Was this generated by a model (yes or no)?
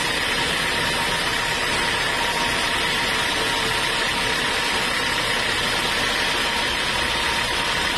no